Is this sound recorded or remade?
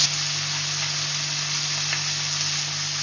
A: recorded